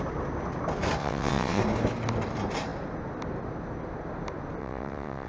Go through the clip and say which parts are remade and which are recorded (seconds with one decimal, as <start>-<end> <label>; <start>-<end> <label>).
0.0-1.0 recorded; 1.0-1.6 remade; 1.6-4.6 recorded; 4.6-5.3 remade